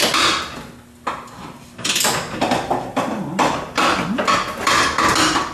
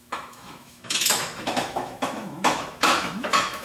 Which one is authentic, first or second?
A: first